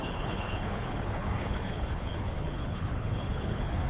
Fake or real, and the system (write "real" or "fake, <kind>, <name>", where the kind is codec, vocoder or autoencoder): fake, codec, HILCodec